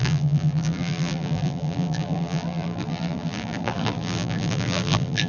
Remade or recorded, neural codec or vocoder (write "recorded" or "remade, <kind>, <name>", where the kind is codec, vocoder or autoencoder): remade, vocoder, BigVGAN v2